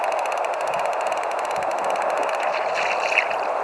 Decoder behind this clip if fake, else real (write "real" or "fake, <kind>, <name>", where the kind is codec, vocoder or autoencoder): real